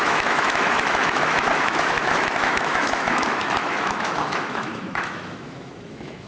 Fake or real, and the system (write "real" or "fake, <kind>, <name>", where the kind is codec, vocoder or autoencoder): fake, autoencoder, DAC-VAE